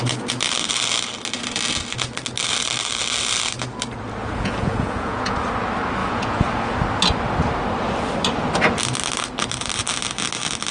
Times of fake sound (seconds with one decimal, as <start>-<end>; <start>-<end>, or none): 4.2-5.5; 6.0-6.8